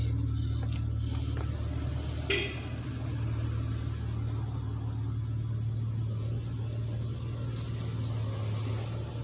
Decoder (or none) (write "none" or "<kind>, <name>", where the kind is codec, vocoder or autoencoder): none